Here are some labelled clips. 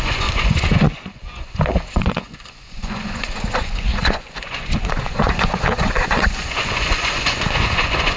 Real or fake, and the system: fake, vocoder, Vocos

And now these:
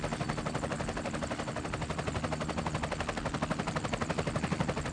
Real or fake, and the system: real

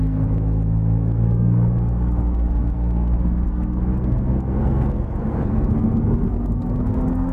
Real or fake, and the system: fake, codec, SNAC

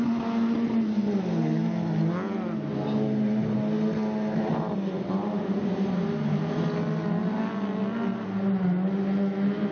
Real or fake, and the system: real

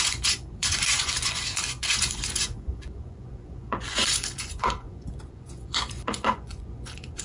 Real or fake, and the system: fake, vocoder, Vocos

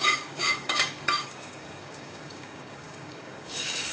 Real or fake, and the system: fake, codec, DAC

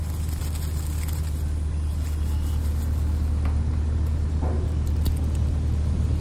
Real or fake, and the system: real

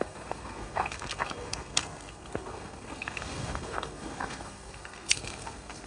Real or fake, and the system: fake, codec, SNAC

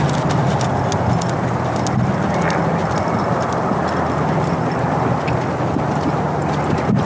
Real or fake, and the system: real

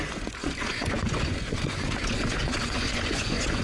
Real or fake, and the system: fake, vocoder, Vocos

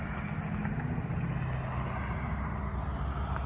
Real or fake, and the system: real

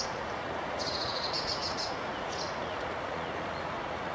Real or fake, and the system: fake, vocoder, Vocos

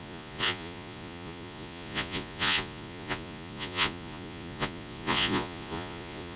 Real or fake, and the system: fake, vocoder, Vocos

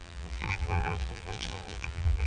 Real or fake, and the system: fake, vocoder, BigVGAN v2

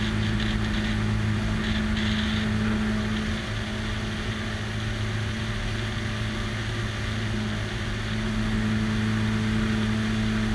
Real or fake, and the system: real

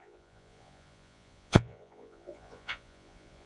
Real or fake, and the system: fake, vocoder, Vocos